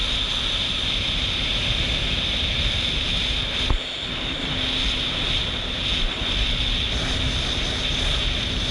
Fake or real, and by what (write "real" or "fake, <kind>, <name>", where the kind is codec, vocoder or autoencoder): real